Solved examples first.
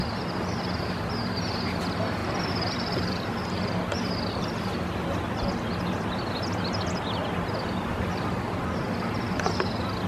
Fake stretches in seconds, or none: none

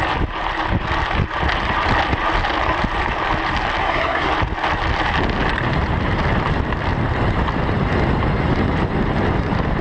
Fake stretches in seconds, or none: 3.8-4.3 (codec, SNAC)